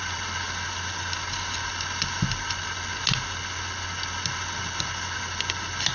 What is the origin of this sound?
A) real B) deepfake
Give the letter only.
A